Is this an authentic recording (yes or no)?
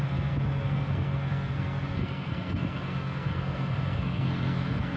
no